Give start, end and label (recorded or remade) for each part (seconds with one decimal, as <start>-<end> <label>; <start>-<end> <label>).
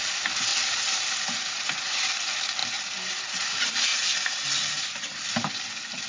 0.0-0.5 recorded; 0.5-1.8 remade; 1.8-3.9 recorded; 3.9-5.2 remade; 5.2-6.1 recorded